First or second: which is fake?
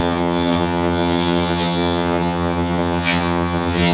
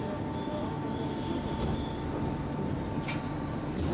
first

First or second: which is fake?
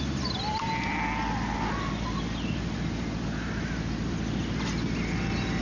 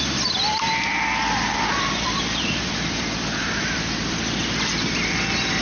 second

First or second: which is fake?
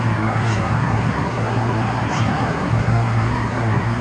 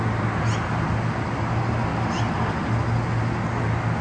first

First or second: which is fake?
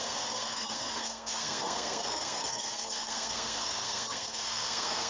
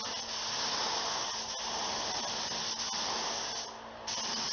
first